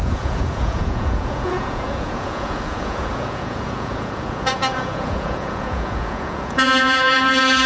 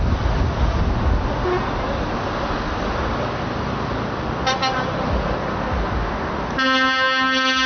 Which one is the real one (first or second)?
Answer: second